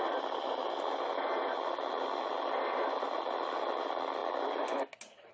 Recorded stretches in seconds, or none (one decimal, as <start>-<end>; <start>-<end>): 0.0-5.3